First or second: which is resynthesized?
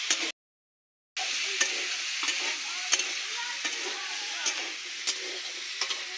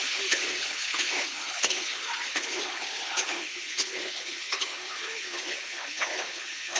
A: second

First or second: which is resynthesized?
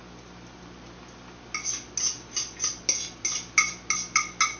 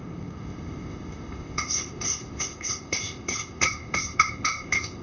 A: second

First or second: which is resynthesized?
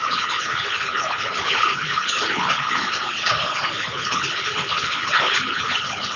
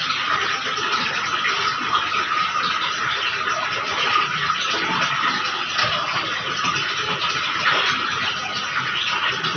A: first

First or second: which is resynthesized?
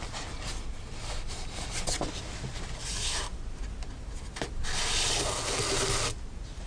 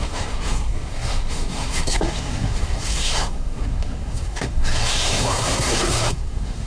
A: second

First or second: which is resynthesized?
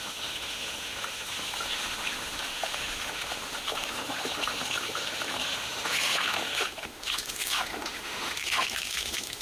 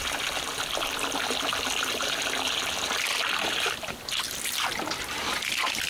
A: first